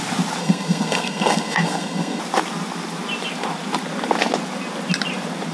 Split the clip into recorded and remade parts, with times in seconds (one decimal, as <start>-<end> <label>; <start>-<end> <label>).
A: 0.0-0.4 recorded; 0.4-2.2 remade; 2.2-5.5 recorded